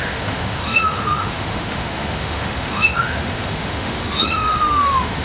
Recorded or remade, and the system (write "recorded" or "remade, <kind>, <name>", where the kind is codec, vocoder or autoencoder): remade, autoencoder, DAC-VAE